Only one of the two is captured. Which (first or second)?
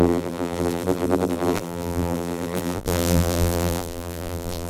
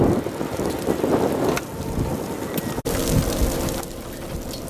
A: second